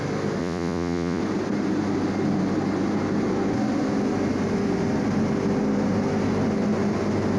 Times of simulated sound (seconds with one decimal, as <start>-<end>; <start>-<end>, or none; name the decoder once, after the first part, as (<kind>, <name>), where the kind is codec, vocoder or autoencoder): 0.4-1.2 (vocoder, Vocos)